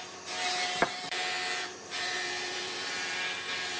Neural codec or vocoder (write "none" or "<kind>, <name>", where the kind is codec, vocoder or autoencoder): vocoder, BigVGAN v2